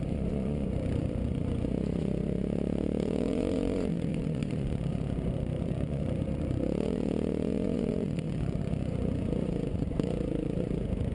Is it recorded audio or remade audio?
remade